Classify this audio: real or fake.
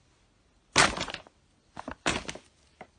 real